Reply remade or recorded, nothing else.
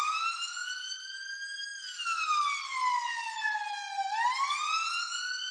recorded